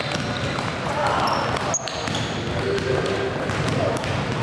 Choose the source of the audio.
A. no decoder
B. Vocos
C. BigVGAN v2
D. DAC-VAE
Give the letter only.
A